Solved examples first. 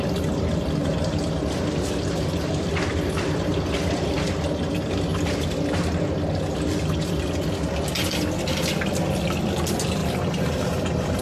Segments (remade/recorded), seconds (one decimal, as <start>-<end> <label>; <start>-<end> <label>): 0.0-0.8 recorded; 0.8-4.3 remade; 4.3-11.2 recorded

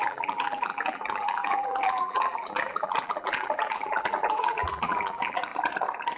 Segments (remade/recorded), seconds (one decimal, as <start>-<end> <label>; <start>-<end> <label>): 0.0-5.5 remade; 5.5-6.2 recorded

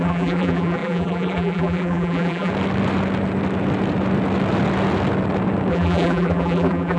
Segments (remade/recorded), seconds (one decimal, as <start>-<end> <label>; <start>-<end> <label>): 0.0-2.5 remade; 2.5-5.7 recorded; 5.7-7.0 remade

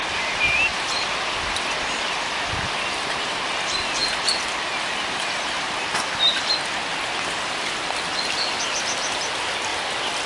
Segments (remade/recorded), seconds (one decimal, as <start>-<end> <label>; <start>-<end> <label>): 0.0-4.0 remade; 4.0-8.6 recorded; 8.6-10.3 remade